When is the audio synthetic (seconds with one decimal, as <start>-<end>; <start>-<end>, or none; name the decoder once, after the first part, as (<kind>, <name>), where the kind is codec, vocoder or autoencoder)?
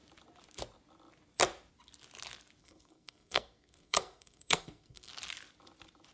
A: 2.6-5.1 (codec, SNAC)